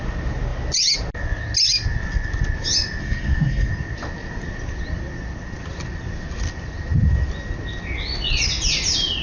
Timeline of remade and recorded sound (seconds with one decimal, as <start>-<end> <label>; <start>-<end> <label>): 0.0-3.0 recorded; 3.0-3.7 remade; 3.7-9.2 recorded